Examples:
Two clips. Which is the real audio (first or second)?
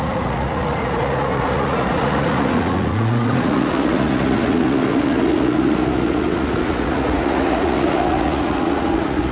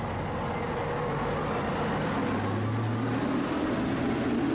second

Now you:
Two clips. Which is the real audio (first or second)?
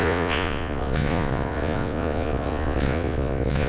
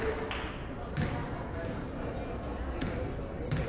second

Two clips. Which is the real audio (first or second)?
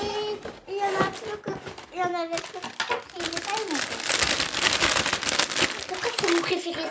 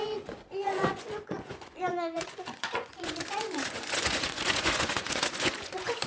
first